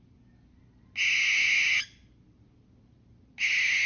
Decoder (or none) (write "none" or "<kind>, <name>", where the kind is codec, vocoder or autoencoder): none